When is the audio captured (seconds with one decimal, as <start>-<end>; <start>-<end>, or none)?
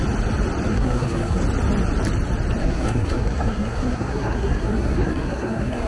0.0-0.7; 1.4-2.6